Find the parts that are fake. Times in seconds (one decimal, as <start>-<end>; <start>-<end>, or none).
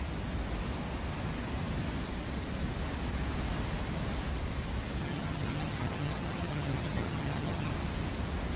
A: 5.0-7.7